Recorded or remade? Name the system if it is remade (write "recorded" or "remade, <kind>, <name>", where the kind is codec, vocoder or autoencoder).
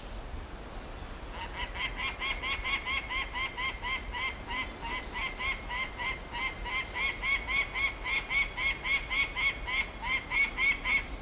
recorded